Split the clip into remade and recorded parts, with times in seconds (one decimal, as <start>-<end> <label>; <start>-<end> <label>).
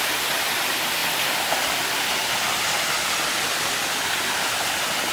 0.0-5.1 recorded